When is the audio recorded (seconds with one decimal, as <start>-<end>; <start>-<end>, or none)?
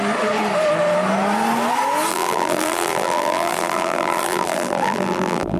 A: 0.0-2.1